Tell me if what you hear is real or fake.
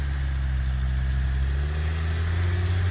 real